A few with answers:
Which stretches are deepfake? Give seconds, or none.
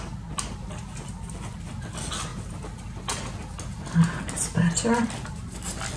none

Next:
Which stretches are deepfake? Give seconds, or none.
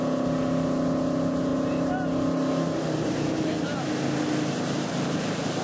none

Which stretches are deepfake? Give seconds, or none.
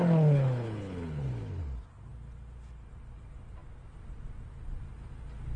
0.0-1.6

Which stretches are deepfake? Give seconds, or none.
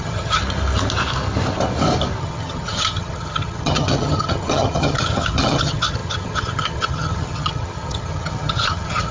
0.0-0.4; 2.2-9.1